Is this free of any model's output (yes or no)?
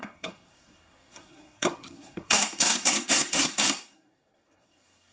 no